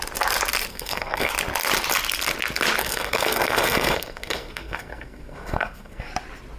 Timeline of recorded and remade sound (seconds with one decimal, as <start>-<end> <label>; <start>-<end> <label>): 0.0-0.7 recorded; 0.7-1.3 remade; 1.3-2.8 recorded; 2.8-6.1 remade; 6.1-6.6 recorded